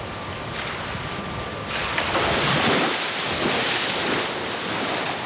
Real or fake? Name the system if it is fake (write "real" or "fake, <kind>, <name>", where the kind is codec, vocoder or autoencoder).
real